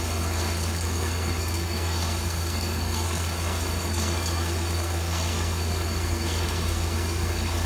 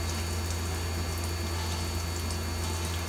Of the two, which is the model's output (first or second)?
first